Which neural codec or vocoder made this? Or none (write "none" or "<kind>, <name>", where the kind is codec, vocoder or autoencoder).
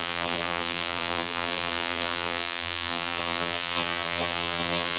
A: vocoder, BigVGAN v2